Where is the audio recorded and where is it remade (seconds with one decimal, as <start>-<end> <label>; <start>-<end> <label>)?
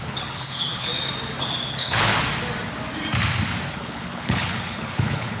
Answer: 0.0-0.9 remade; 0.9-1.7 recorded; 1.7-2.1 remade; 2.1-3.7 recorded; 3.7-5.4 remade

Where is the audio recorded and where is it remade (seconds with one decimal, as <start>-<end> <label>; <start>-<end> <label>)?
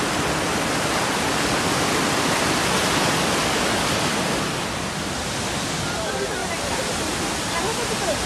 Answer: 0.0-8.3 recorded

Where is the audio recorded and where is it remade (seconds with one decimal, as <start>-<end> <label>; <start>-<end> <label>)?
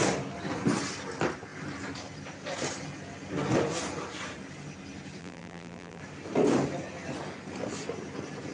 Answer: 0.0-5.2 recorded; 5.2-6.0 remade; 6.0-8.5 recorded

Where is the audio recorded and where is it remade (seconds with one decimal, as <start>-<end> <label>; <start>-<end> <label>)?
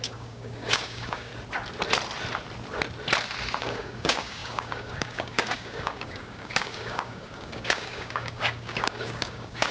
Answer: 0.0-1.3 remade; 1.3-3.6 recorded; 3.6-9.7 remade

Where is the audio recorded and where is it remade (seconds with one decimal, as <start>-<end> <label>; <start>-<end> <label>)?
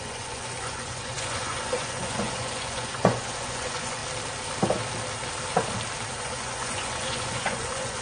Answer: 0.0-4.0 remade; 4.0-6.1 recorded; 6.1-8.0 remade